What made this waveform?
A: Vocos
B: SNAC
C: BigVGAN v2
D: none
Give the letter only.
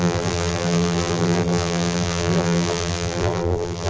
C